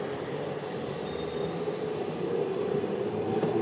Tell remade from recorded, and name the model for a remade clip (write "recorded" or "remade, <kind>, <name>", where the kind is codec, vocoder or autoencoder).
remade, vocoder, BigVGAN v2